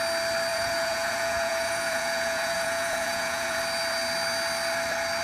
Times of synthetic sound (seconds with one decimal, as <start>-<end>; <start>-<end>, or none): 0.5-3.6